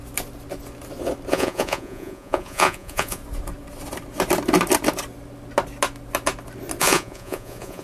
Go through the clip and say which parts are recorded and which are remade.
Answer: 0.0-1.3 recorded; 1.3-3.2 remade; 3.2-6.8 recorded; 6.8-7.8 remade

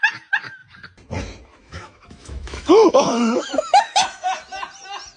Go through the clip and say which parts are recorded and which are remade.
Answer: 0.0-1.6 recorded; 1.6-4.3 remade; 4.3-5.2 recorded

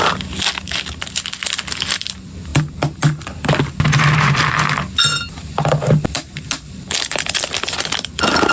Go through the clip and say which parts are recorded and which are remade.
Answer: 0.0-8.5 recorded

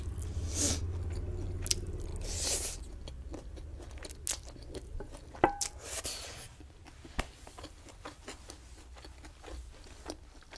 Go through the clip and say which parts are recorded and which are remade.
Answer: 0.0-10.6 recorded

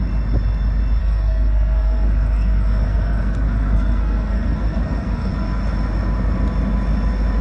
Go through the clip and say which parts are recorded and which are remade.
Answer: 0.0-1.0 recorded; 1.0-5.3 remade; 5.3-7.4 recorded

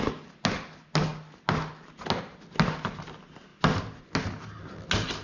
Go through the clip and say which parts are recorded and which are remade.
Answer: 0.0-5.2 recorded